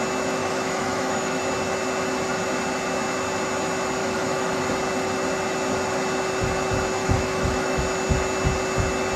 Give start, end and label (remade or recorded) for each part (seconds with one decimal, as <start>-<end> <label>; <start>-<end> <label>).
0.0-0.4 recorded; 0.4-1.4 remade; 1.4-4.0 recorded; 4.0-4.6 remade; 4.6-7.0 recorded; 7.0-7.8 remade; 7.8-9.2 recorded